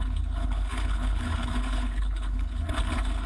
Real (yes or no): no